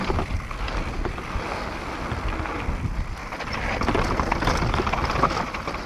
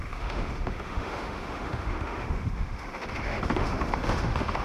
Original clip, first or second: first